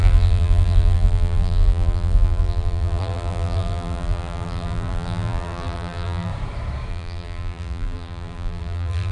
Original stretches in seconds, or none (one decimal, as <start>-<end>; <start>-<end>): 6.3-6.9